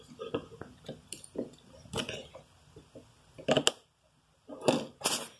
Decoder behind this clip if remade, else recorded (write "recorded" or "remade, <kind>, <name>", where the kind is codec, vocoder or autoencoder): recorded